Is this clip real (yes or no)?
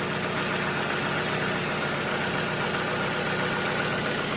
yes